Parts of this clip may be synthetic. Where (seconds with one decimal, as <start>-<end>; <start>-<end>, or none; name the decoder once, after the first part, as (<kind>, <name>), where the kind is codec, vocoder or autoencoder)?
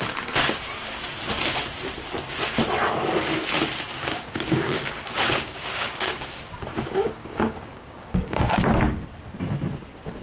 3.9-6.4 (codec, DAC); 7.2-9.0